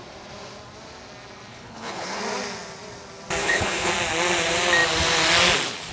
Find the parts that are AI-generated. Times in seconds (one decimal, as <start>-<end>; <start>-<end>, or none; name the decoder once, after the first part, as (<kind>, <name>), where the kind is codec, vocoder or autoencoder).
1.5-2.2 (codec, HILCodec); 3.4-3.9